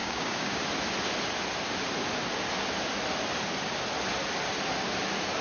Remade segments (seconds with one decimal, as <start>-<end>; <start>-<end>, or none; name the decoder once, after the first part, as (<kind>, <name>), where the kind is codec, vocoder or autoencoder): 0.0-0.6 (codec, DAC)